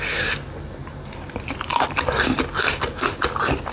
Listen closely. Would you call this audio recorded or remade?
remade